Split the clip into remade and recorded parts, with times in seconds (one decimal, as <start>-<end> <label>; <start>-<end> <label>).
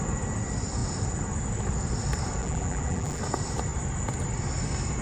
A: 0.0-2.4 recorded; 2.4-3.2 remade; 3.2-5.0 recorded